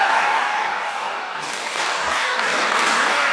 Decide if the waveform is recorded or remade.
remade